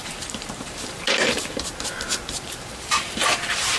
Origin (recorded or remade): remade